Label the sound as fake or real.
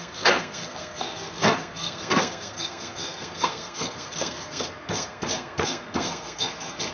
fake